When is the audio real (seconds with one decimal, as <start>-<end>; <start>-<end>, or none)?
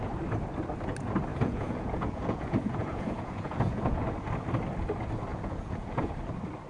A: 0.0-1.3; 3.9-5.3; 6.1-6.7